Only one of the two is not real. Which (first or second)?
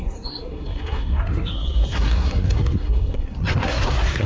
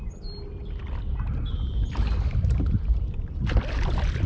first